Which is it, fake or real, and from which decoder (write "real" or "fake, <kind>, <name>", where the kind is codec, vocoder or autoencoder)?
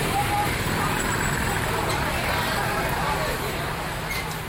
real